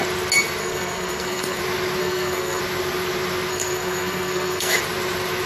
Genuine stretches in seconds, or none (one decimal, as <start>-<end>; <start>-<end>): 0.0-0.6; 1.6-2.0; 2.6-3.5; 4.8-5.5